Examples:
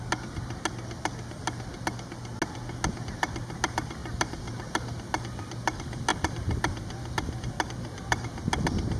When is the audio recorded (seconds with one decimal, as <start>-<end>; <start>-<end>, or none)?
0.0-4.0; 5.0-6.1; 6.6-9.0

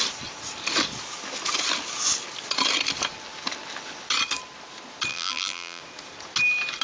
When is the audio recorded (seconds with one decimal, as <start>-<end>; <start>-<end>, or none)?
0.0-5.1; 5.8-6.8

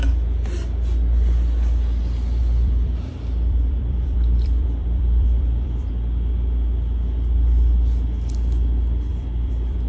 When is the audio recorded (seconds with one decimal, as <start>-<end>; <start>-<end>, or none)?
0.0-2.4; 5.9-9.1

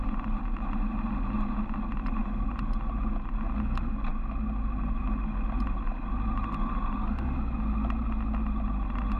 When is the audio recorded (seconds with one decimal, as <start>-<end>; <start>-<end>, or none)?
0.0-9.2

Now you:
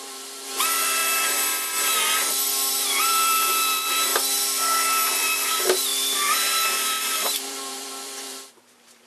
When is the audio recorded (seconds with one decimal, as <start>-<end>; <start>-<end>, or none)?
1.0-2.3; 4.1-5.2

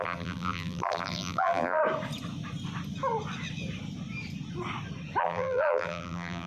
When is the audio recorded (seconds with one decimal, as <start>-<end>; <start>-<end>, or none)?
1.8-5.2

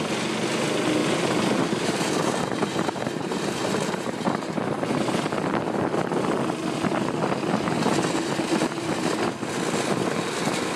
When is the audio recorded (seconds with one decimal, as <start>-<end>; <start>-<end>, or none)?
0.0-1.0; 4.5-10.8

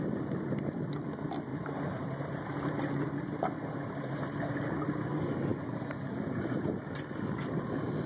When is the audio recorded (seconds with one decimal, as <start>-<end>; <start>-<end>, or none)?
0.0-1.5; 2.2-8.1